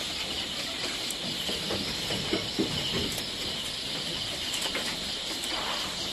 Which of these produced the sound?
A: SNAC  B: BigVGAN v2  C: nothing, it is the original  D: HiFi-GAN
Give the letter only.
C